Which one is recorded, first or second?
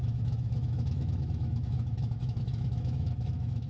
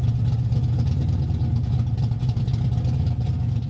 second